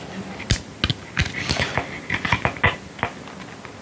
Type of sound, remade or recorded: recorded